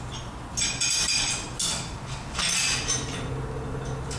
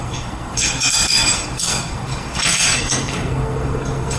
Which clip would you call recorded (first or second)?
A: first